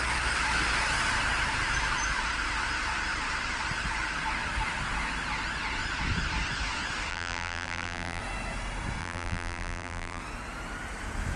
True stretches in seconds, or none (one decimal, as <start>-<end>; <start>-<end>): 0.0-7.1; 8.2-9.0; 10.2-11.4